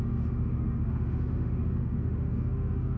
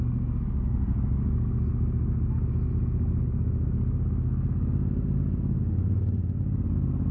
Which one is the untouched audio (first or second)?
second